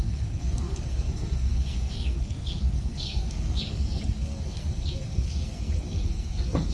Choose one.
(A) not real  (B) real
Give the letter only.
A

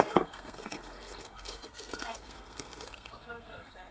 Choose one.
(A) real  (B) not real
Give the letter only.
B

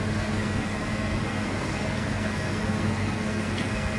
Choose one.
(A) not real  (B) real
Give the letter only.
A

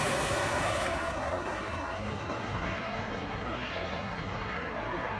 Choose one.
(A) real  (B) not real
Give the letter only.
B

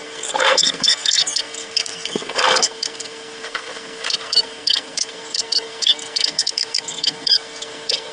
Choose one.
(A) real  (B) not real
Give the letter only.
B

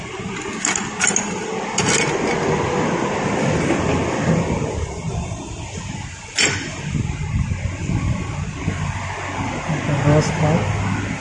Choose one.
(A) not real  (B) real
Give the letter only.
B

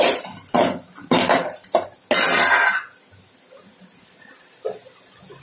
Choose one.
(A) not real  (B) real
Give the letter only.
B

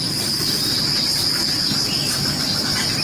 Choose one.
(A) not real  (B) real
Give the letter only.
B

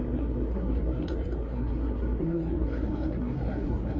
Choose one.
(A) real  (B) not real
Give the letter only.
B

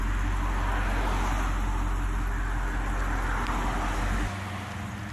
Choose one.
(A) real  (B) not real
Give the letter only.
A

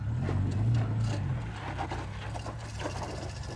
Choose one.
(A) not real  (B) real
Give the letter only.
B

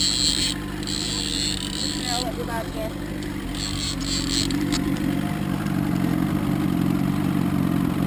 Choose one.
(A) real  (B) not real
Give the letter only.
A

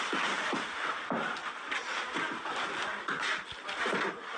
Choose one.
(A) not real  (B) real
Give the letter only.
B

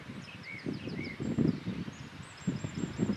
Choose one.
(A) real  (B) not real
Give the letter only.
A